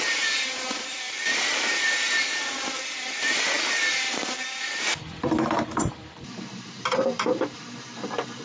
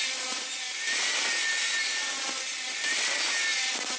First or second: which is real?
second